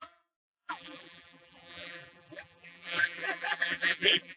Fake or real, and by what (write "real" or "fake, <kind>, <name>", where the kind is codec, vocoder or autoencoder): fake, vocoder, BigVGAN v2